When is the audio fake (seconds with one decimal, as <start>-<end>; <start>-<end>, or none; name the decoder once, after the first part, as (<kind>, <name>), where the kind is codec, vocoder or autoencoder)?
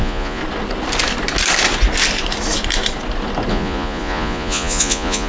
0.0-0.4 (vocoder, Vocos); 3.5-5.3